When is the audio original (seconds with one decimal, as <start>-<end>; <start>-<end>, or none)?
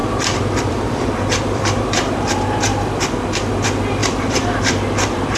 1.8-4.0